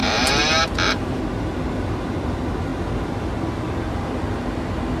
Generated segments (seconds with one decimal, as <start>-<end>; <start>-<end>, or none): 0.0-1.2